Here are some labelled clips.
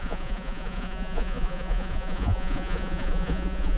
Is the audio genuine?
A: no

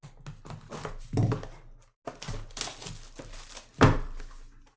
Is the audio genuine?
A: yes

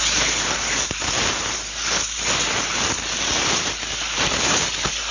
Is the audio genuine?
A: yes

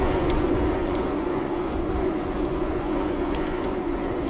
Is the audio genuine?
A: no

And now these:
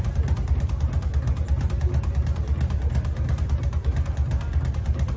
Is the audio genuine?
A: yes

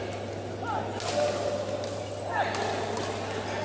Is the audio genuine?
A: yes